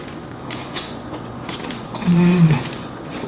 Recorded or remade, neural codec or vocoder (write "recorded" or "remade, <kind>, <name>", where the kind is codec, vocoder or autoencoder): remade, vocoder, Vocos